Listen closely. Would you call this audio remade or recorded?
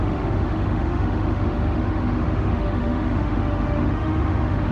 remade